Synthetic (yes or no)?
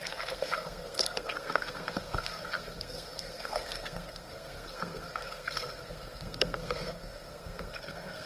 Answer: yes